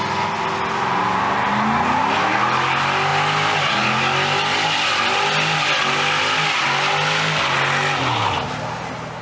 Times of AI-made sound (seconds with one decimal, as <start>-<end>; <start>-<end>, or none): none